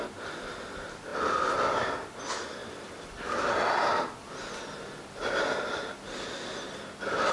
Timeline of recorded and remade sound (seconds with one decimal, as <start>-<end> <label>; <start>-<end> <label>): 0.0-1.1 recorded; 1.1-2.2 remade; 2.2-2.6 recorded; 2.6-7.3 remade

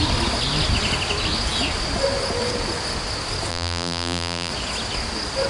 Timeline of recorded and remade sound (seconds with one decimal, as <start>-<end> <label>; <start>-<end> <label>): 0.0-3.5 recorded; 3.5-4.5 remade; 4.5-5.5 recorded